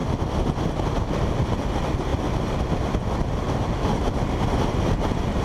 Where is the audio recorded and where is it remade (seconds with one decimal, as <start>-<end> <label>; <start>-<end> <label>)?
0.0-5.4 recorded